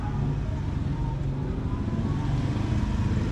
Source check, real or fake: real